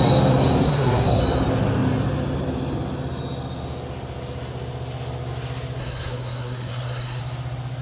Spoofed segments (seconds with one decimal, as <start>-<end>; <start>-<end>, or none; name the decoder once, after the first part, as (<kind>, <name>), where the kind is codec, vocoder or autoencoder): 0.6-1.2 (codec, SNAC); 5.8-7.2